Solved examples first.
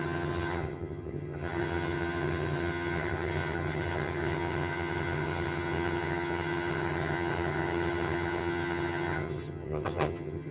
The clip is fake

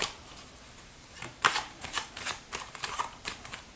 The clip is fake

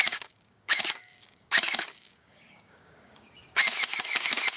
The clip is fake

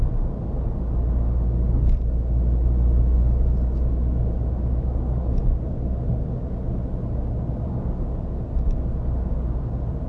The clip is real